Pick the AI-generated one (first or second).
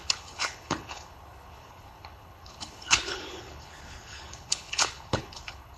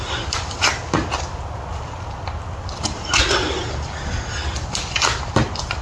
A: first